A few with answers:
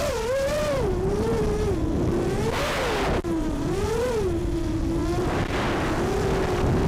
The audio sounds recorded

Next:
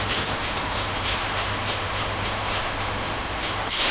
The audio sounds remade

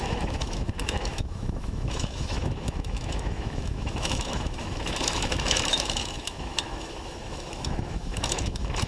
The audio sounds remade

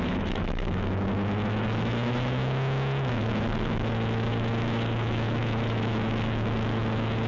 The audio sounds remade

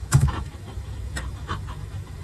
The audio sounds remade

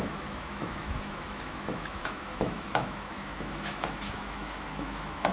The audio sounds remade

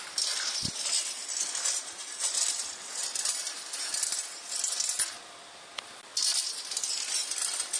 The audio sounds recorded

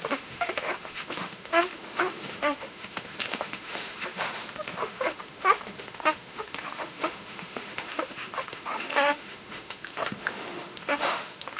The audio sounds remade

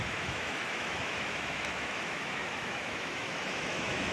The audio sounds remade